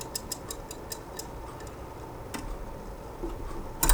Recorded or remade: recorded